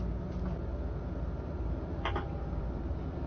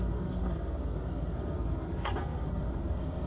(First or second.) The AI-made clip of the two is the second